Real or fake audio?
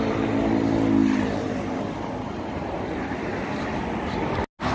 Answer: real